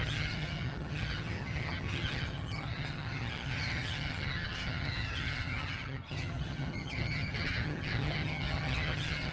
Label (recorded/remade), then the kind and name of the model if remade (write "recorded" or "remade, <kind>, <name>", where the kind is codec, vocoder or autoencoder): remade, vocoder, HiFi-GAN